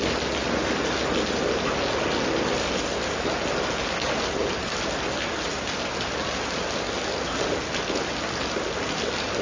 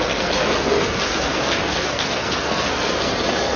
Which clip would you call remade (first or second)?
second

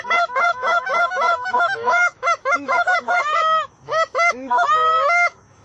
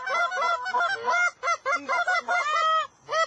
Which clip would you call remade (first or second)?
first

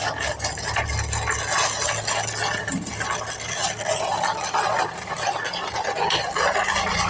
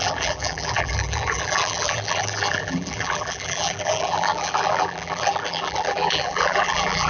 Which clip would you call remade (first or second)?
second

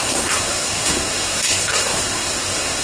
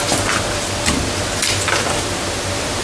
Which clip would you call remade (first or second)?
first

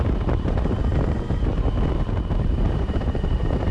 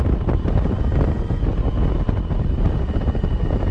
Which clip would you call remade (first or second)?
first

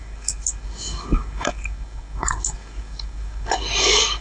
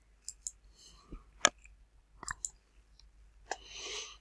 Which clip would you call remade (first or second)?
first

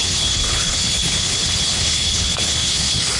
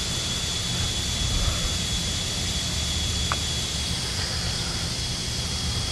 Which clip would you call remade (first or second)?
first